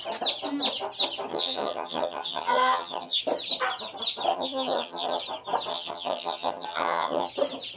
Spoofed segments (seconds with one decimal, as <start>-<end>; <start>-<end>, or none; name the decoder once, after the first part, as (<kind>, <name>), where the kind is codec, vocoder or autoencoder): 1.3-3.2 (vocoder, HiFi-GAN); 4.3-5.2; 5.7-7.3